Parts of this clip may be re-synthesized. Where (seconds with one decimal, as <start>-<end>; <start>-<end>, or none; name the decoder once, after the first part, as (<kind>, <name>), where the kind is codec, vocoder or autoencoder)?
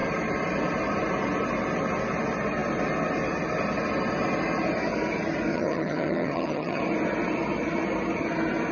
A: 5.5-6.8 (vocoder, HiFi-GAN)